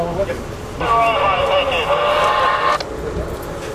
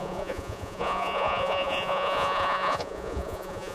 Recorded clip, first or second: first